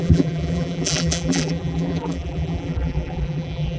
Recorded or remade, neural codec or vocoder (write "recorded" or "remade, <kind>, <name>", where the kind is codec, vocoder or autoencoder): remade, vocoder, BigVGAN v2